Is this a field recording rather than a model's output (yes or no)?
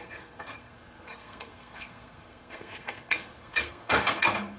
no